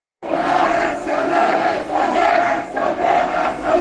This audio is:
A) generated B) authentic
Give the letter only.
A